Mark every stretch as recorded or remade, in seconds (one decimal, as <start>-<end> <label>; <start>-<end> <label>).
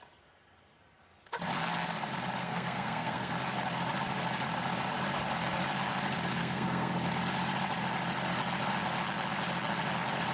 0.0-2.4 recorded; 2.4-3.3 remade; 3.3-6.4 recorded; 6.4-6.9 remade; 6.9-10.3 recorded